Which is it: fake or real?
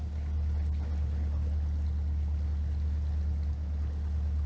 real